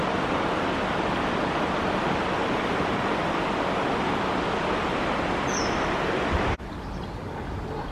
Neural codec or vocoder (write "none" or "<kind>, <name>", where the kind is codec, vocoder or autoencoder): none